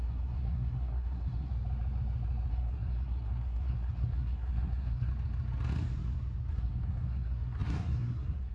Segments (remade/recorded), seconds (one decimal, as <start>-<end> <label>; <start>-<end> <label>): 0.0-1.5 remade; 1.5-2.5 recorded; 2.5-5.1 remade; 5.1-6.5 recorded; 6.5-8.5 remade